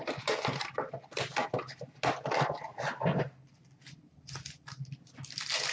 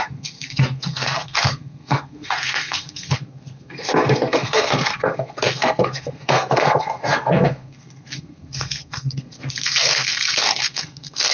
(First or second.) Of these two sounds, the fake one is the second